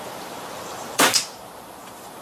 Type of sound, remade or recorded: remade